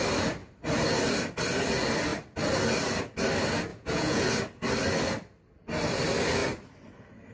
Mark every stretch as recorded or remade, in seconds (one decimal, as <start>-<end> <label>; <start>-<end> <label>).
0.0-3.7 recorded; 3.7-4.2 remade; 4.2-7.3 recorded